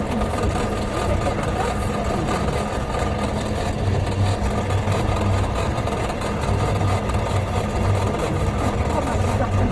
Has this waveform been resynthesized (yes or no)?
no